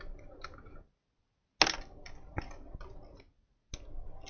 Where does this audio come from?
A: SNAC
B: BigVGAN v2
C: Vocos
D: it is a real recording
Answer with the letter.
D